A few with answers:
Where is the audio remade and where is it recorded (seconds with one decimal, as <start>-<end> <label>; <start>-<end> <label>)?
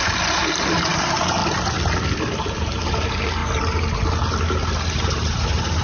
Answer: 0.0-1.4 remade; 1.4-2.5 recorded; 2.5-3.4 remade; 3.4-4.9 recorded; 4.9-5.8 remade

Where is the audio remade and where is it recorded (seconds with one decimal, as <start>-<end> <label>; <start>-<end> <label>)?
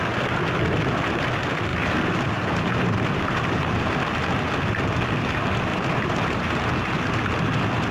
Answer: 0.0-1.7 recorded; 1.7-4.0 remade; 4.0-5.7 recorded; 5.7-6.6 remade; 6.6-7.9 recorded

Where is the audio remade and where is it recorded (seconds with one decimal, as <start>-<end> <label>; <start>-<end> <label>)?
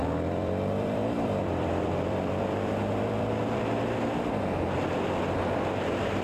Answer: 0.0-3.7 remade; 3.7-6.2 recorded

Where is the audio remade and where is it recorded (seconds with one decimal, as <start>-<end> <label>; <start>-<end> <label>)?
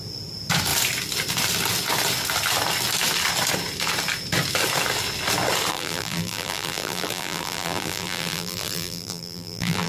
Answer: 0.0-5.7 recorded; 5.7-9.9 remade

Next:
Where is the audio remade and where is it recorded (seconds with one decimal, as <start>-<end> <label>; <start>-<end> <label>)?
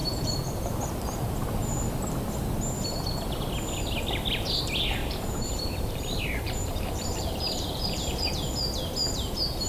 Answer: 0.0-1.7 remade; 1.7-5.0 recorded; 5.0-8.3 remade; 8.3-9.7 recorded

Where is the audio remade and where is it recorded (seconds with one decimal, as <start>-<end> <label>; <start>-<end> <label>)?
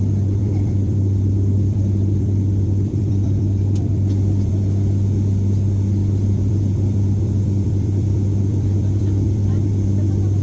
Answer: 0.0-0.4 recorded; 0.4-4.5 remade; 4.5-6.0 recorded; 6.0-9.7 remade; 9.7-10.4 recorded